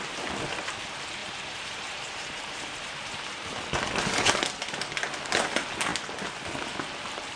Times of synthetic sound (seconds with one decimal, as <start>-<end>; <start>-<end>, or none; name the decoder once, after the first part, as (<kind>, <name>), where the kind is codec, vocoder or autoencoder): 1.2-3.6 (vocoder, BigVGAN v2)